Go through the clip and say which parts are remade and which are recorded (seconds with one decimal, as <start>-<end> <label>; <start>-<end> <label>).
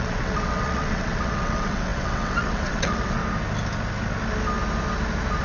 0.0-3.2 remade; 3.2-5.4 recorded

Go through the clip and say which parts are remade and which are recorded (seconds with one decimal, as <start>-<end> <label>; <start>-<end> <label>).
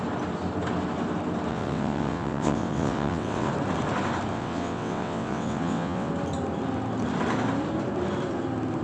0.0-1.5 recorded; 1.5-3.5 remade; 3.5-4.3 recorded; 4.3-6.1 remade; 6.1-8.8 recorded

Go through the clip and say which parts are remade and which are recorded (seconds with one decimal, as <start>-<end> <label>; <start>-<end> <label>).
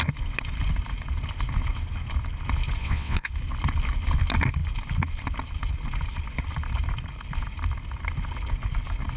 0.0-2.8 recorded; 2.8-3.3 remade; 3.3-9.2 recorded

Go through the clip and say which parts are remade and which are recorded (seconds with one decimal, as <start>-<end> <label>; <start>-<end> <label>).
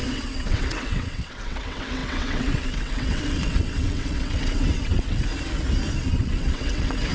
0.0-5.3 remade; 5.3-6.1 recorded; 6.1-7.1 remade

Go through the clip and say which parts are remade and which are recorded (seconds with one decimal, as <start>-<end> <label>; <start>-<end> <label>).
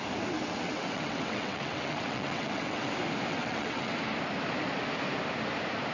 0.0-0.4 recorded; 0.4-2.9 remade; 2.9-3.3 recorded; 3.3-4.0 remade; 4.0-5.9 recorded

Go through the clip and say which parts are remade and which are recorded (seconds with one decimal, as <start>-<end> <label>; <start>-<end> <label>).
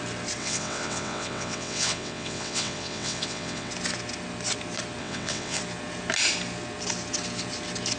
0.0-0.4 recorded; 0.4-3.7 remade; 3.7-5.0 recorded; 5.0-5.6 remade; 5.6-8.0 recorded